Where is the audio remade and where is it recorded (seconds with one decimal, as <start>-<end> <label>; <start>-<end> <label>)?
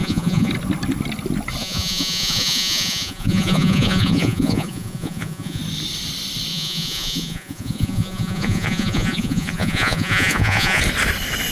0.0-0.5 remade; 0.5-1.6 recorded; 1.6-5.6 remade; 5.6-6.5 recorded; 6.5-10.8 remade; 10.8-11.5 recorded